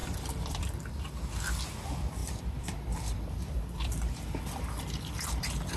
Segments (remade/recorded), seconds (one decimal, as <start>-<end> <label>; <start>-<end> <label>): 0.0-0.6 remade; 0.6-2.2 recorded; 2.2-5.2 remade; 5.2-5.8 recorded